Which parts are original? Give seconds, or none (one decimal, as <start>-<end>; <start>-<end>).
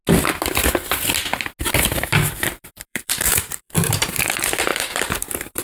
0.0-2.4